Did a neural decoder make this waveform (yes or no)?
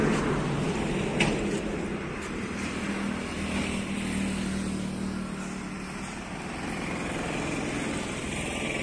no